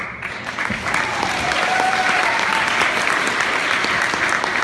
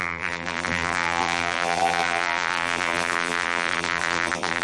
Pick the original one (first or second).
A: first